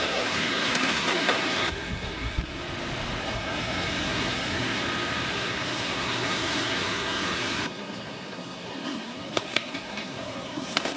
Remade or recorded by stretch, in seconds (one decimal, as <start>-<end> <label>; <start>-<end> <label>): 0.0-2.6 remade; 2.6-3.2 recorded; 3.2-4.8 remade; 4.8-5.3 recorded; 5.3-11.0 remade